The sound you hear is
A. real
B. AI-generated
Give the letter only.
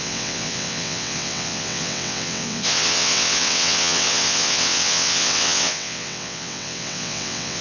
B